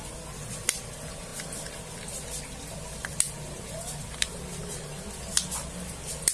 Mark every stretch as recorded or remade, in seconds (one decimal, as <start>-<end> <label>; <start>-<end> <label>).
0.0-6.3 recorded

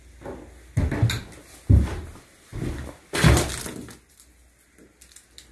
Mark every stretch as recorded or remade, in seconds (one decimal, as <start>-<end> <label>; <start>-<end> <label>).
0.0-5.5 recorded